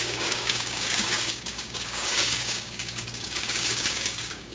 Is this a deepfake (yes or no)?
yes